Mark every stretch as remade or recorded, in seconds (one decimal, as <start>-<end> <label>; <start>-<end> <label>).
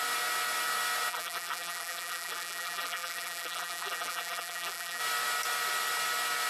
0.0-1.1 recorded; 1.1-5.0 remade; 5.0-6.5 recorded